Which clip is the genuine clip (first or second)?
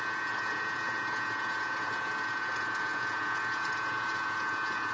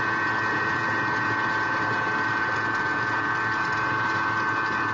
second